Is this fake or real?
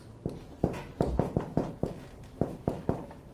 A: real